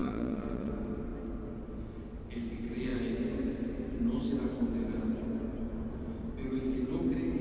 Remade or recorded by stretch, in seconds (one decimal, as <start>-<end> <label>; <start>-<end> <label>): 0.0-0.7 remade; 0.7-7.4 recorded